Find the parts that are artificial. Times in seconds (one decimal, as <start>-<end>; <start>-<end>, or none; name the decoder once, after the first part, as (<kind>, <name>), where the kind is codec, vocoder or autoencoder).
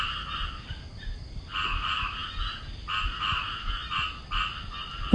none